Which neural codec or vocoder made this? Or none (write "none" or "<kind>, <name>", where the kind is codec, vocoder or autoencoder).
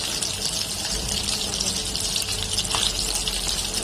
none